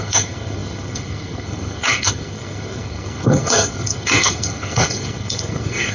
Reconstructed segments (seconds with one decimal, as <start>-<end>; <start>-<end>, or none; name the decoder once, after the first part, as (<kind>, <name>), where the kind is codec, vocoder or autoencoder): 0.0-5.9 (codec, SNAC)